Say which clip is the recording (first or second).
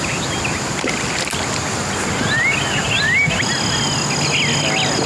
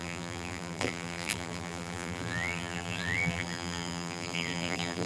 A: first